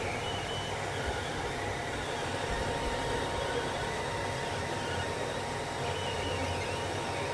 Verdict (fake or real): real